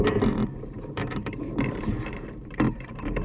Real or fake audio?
fake